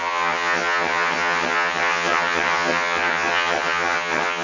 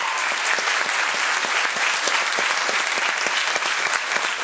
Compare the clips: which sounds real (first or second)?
second